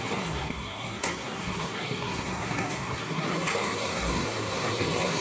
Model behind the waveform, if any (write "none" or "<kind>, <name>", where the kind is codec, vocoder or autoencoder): codec, SNAC